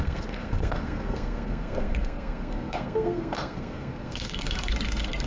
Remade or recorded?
remade